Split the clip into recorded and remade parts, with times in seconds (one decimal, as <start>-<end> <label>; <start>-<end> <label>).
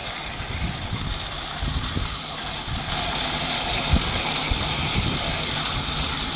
0.0-6.4 recorded